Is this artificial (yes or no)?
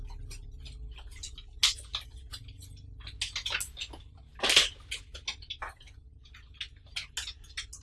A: no